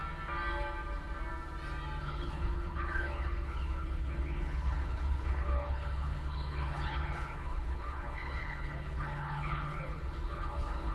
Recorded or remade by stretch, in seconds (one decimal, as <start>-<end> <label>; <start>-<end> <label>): 0.0-2.0 recorded; 2.0-10.9 remade